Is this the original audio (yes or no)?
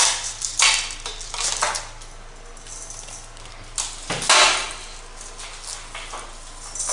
yes